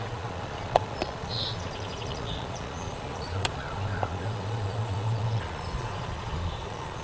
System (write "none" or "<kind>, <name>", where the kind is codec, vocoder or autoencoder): vocoder, Vocos